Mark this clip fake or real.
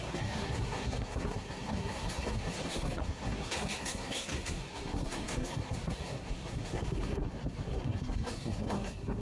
fake